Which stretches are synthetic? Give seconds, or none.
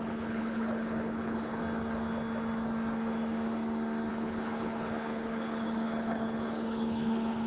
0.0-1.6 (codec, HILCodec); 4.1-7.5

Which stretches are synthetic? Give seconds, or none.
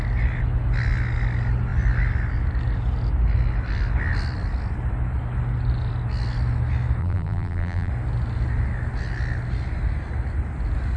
7.0-7.9 (vocoder, BigVGAN v2)